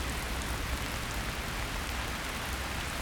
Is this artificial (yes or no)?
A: no